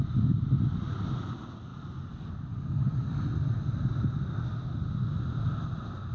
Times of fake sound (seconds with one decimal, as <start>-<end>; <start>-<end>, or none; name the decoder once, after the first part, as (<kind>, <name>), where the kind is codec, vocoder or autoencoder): none